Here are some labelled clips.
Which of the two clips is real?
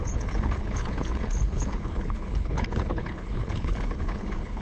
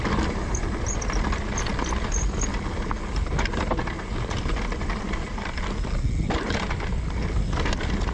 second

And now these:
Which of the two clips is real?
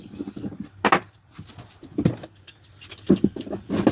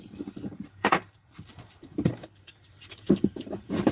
first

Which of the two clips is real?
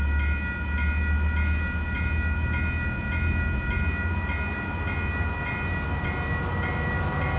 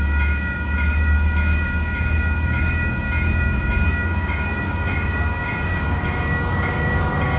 first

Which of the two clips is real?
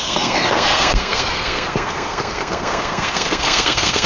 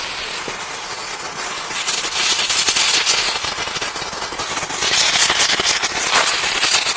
second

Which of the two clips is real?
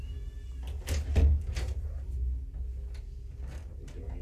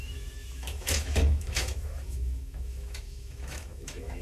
first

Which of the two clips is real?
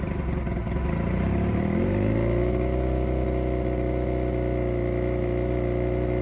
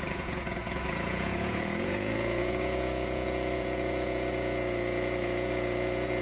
first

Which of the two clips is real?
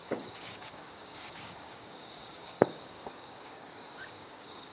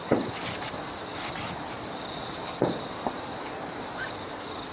second